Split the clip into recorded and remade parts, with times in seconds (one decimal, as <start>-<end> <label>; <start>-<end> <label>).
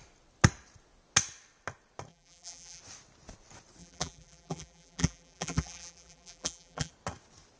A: 0.0-2.1 recorded; 2.1-2.8 remade; 2.8-3.8 recorded; 3.8-6.9 remade; 6.9-7.6 recorded